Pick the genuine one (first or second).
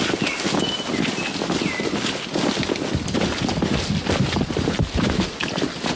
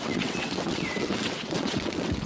first